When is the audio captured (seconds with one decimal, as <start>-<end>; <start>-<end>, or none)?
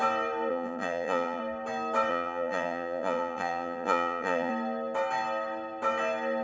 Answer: 0.0-0.5; 1.4-2.1; 4.5-6.4